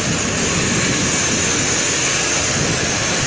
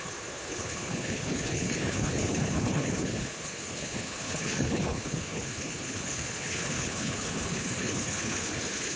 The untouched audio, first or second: first